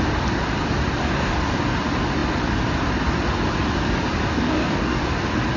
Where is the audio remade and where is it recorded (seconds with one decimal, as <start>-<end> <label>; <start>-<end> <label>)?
0.0-1.0 recorded; 1.0-1.5 remade; 1.5-4.3 recorded; 4.3-5.0 remade; 5.0-5.6 recorded